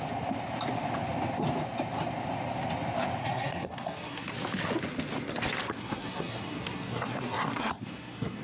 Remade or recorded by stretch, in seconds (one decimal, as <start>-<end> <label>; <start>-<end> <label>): 0.0-3.2 recorded; 3.2-4.3 remade; 4.3-5.8 recorded; 5.8-8.4 remade